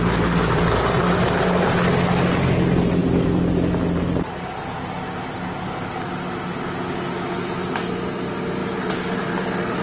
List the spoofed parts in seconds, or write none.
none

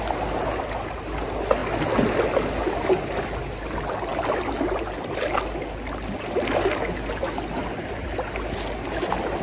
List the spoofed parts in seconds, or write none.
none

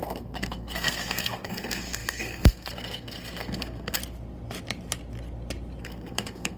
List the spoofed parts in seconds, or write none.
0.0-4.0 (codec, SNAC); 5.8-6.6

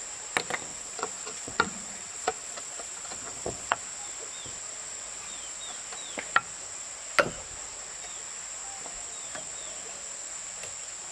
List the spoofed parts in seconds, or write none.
0.7-3.8 (vocoder, WaveNeXt)

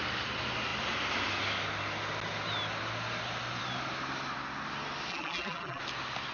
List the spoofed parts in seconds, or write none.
5.1-5.8 (vocoder, BigVGAN v2)

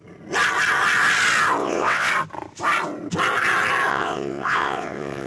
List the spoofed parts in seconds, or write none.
1.6-2.1 (vocoder, WaveNeXt); 3.9-5.3

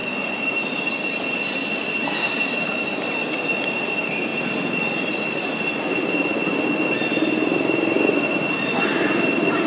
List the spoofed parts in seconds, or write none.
none